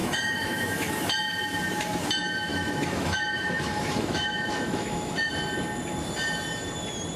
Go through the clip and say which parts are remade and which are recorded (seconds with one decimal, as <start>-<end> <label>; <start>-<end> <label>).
0.0-0.9 remade; 0.9-2.5 recorded; 2.5-5.3 remade; 5.3-7.2 recorded